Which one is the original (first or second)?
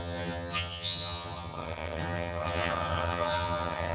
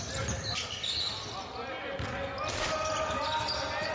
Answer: second